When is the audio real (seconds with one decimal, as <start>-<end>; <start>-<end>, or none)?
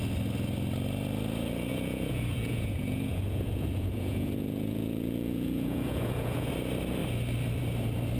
0.0-1.7; 6.5-8.2